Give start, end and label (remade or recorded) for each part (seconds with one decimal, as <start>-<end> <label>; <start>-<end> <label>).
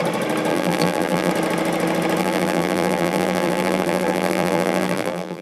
0.0-0.5 recorded; 0.5-1.3 remade; 1.3-2.2 recorded; 2.2-5.4 remade